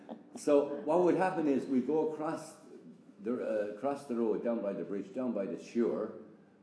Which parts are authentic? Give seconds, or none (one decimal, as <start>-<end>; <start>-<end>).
0.0-1.0; 5.0-6.6